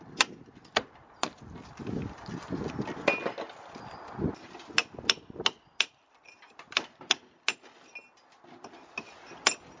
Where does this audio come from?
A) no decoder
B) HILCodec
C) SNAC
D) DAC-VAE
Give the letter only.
A